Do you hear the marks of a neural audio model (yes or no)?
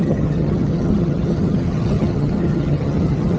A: yes